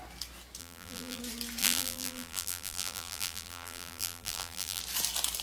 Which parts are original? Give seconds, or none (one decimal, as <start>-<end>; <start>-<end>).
0.0-0.6; 1.2-1.6; 4.8-5.4